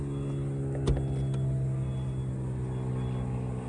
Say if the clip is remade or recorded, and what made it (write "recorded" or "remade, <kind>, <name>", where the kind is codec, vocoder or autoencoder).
recorded